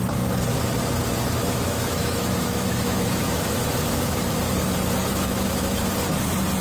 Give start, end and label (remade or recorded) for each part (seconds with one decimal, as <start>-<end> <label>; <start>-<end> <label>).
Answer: 0.0-1.4 recorded; 1.4-4.2 remade; 4.2-5.1 recorded; 5.1-5.9 remade; 5.9-6.6 recorded